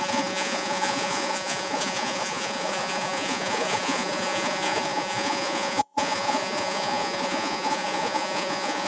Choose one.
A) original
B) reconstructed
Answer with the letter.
B